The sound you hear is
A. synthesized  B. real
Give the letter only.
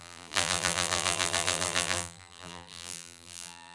A